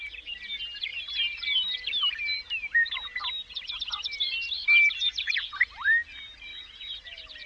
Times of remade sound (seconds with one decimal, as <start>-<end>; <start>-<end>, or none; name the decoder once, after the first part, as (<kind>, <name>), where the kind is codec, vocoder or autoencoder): 6.5-7.5 (vocoder, Vocos)